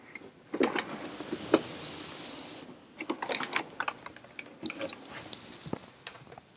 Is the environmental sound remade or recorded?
recorded